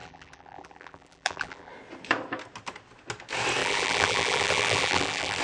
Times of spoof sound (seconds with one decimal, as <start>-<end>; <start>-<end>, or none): 0.0-1.7; 3.6-5.4